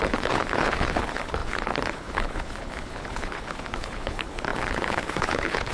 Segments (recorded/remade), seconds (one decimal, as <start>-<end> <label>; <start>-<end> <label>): 0.0-5.7 remade